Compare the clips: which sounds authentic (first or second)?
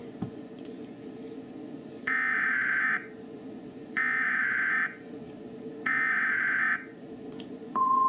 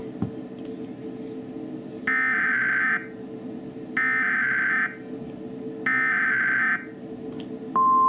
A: second